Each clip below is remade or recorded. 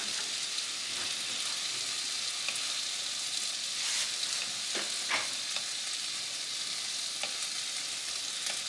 recorded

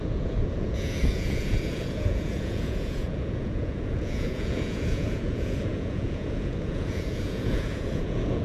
remade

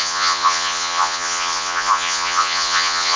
remade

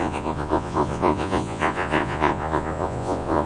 remade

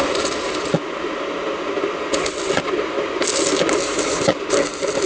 recorded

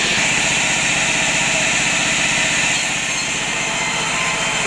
recorded